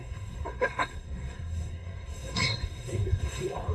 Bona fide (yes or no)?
no